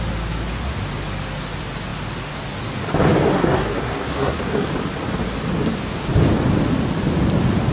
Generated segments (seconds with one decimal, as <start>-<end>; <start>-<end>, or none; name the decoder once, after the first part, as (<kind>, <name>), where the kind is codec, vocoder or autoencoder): 3.3-4.7 (codec, SNAC)